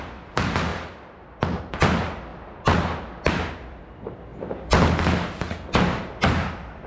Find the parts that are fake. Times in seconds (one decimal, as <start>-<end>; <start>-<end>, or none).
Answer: 0.0-2.3; 3.2-4.3; 6.1-6.9